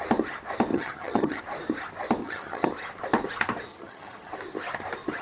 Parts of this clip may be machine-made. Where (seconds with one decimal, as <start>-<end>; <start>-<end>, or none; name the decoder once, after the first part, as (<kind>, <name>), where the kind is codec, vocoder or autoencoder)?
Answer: 0.7-1.4 (vocoder, HiFi-GAN); 2.2-2.7; 3.7-4.3